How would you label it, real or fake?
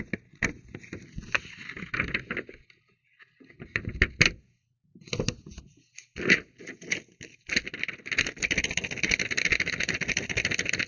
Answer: real